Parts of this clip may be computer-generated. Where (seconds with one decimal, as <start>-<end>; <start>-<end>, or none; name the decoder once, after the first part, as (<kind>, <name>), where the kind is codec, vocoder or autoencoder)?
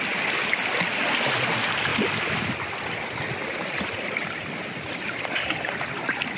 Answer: none